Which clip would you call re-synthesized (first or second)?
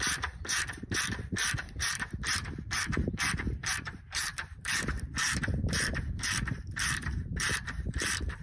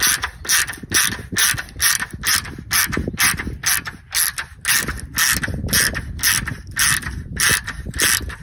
first